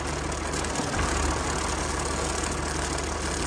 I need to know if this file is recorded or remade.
recorded